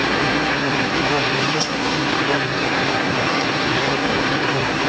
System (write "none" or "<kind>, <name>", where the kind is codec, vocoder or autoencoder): codec, SNAC